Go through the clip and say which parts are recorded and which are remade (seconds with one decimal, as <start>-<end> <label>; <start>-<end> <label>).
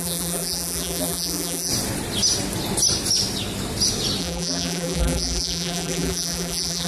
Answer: 0.0-1.7 remade; 1.7-4.2 recorded; 4.2-6.9 remade